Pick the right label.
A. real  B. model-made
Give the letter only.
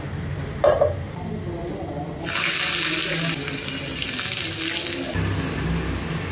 A